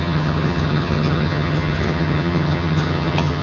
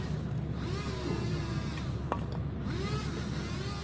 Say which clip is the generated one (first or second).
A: first